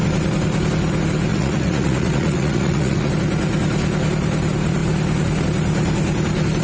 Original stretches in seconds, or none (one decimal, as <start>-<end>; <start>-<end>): 0.0-1.3; 3.1-6.6